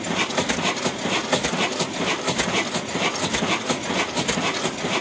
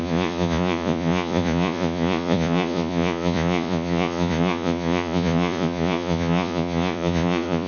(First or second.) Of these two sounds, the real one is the first